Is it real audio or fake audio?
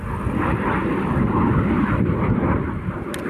real